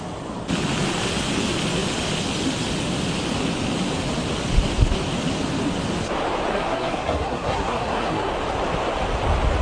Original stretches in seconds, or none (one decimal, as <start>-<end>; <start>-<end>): 0.0-6.5; 8.3-9.6